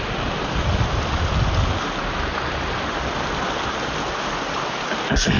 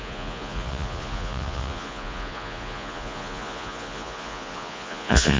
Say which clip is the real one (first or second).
first